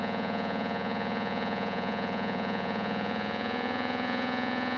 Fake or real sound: fake